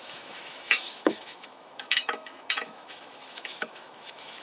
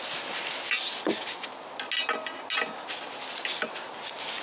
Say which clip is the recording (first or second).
second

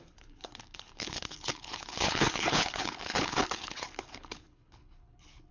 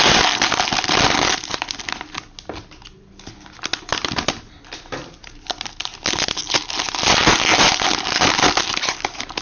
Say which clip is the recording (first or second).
second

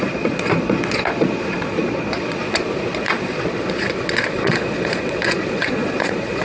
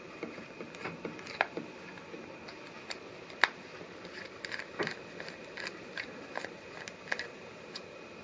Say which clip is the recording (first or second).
second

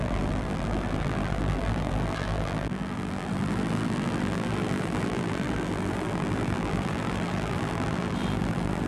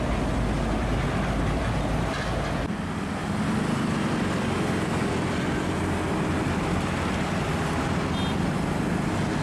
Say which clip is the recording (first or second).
second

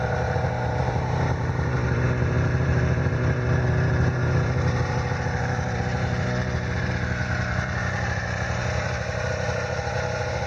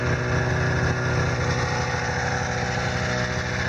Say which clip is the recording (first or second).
second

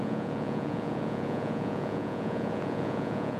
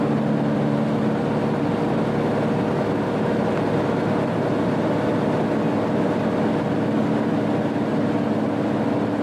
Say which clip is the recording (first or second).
second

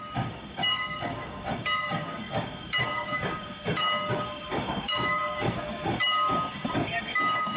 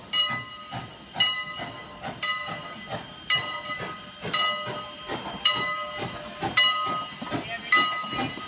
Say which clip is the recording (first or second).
second